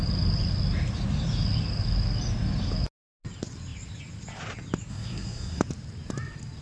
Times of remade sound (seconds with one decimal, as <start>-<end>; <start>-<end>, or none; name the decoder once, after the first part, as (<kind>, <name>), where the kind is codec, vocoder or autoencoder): 4.9-5.6 (codec, SNAC)